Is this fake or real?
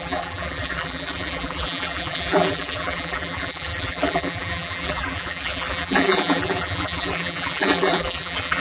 fake